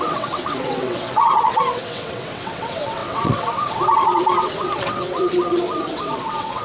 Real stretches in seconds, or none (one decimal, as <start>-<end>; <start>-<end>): none